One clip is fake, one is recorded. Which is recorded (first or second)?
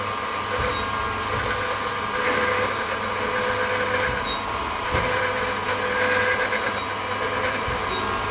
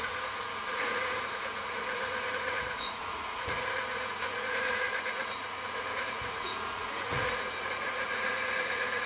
first